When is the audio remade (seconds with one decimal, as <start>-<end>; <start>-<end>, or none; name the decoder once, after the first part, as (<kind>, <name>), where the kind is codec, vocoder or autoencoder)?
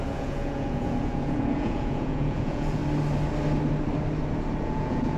0.0-2.8 (vocoder, Vocos); 4.6-5.2